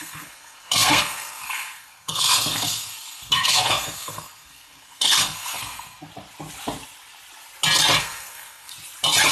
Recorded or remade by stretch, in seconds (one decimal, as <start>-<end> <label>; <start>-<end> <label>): 0.0-6.1 remade; 6.1-8.0 recorded; 8.0-8.7 remade; 8.7-9.3 recorded